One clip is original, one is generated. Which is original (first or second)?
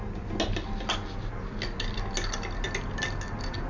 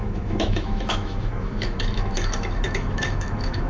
first